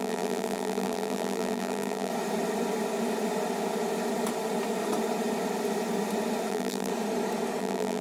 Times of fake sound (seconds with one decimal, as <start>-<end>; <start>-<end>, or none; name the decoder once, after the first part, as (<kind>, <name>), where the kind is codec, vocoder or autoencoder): 0.0-2.1 (vocoder, BigVGAN v2); 6.5-6.9; 7.6-8.0